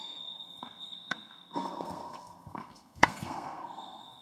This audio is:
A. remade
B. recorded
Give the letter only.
A